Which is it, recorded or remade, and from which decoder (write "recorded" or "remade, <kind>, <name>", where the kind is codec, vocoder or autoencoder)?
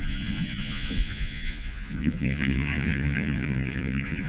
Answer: remade, vocoder, Vocos